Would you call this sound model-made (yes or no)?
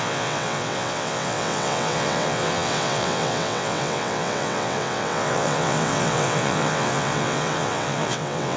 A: yes